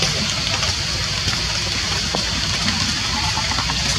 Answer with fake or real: real